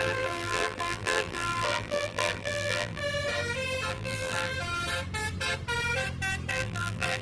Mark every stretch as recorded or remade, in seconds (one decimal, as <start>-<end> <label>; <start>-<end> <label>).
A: 0.0-3.0 remade; 3.0-3.9 recorded; 3.9-4.5 remade; 4.5-6.5 recorded; 6.5-7.2 remade